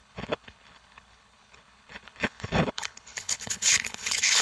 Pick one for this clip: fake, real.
fake